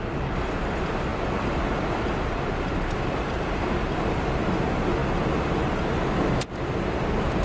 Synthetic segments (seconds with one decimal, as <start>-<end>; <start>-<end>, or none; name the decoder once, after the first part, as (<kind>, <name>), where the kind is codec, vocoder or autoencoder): none